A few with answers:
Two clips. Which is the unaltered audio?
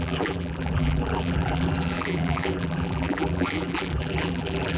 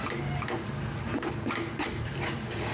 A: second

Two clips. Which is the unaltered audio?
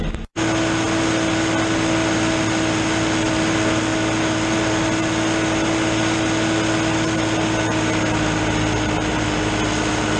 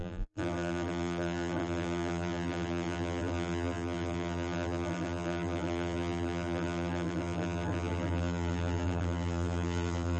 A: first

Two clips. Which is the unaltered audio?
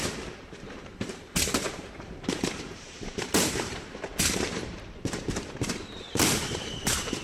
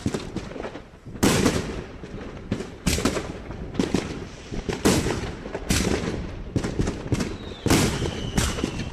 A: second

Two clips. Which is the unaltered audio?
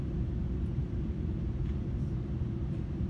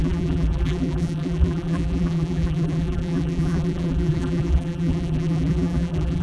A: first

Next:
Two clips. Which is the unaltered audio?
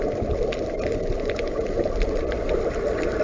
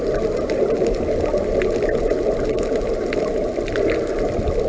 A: second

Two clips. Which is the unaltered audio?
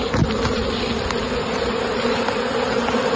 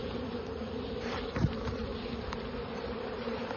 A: first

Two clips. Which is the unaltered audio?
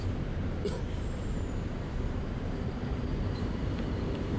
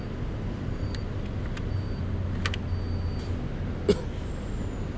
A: second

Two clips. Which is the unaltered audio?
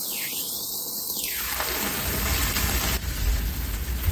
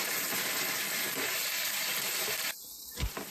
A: first